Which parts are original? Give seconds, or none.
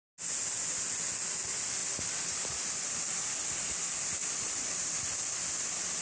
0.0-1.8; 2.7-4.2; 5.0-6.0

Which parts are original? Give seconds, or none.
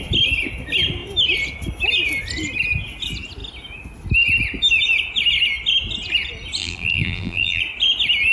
0.0-6.6; 7.6-8.3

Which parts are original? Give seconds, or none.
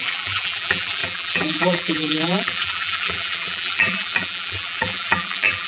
none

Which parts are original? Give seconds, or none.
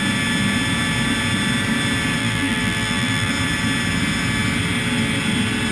0.0-2.2; 3.3-5.7